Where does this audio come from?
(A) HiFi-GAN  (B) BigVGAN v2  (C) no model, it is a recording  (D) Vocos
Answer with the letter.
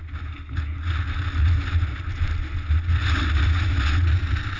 C